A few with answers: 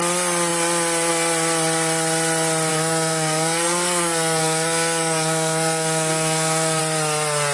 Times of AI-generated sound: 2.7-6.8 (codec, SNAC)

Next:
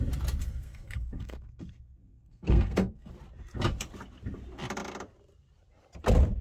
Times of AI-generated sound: 0.4-3.1 (codec, SNAC)

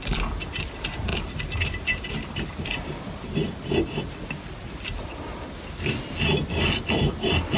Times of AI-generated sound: none

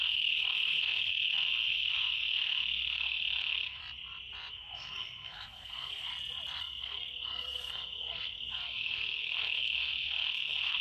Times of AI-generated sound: 0.0-3.8 (codec, SNAC); 4.5-6.1; 6.6-10.8

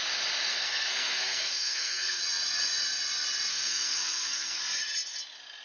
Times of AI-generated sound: 0.5-2.2 (codec, SNAC); 3.5-4.6